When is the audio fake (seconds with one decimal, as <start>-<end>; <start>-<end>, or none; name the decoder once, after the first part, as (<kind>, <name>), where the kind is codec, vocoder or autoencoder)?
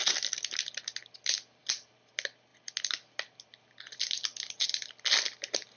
none